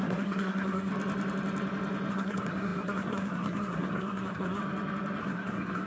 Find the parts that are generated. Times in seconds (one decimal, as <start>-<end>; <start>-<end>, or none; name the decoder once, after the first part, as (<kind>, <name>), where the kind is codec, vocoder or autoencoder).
0.0-0.9 (codec, SNAC); 2.1-4.6; 5.2-5.9